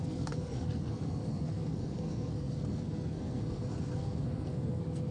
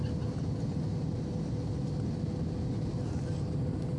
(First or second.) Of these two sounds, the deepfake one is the first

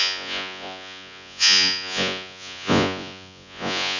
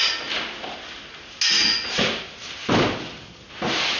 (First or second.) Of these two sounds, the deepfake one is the first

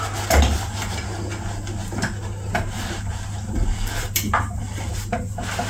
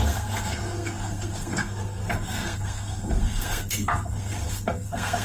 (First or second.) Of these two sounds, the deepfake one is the second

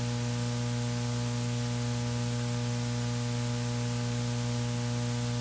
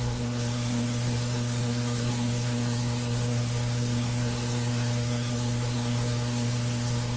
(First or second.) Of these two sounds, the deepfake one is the second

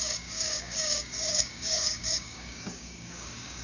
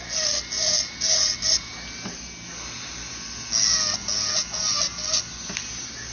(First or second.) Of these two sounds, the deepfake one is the first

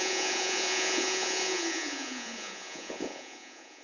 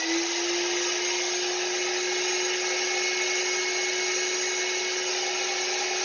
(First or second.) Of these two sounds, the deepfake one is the first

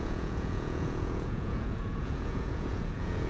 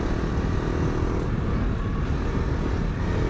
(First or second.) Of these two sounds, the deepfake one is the first